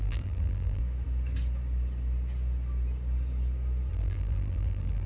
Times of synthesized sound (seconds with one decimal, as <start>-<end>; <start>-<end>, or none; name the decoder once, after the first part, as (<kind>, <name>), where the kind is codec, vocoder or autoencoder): 0.0-0.8 (vocoder, BigVGAN v2); 3.9-5.1